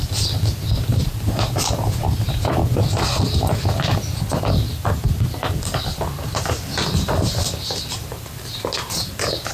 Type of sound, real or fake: fake